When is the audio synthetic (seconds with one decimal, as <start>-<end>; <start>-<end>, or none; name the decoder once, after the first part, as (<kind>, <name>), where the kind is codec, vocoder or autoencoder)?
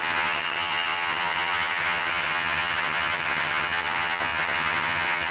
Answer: 0.0-5.3 (vocoder, HiFi-GAN)